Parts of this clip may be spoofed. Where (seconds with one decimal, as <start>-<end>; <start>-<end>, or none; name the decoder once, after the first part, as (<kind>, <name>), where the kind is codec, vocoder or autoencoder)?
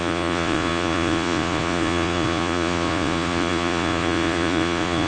0.0-5.1 (vocoder, Vocos)